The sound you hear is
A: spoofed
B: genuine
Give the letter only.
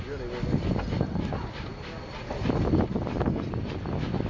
B